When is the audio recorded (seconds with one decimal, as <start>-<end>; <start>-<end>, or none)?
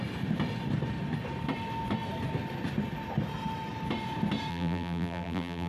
0.0-4.5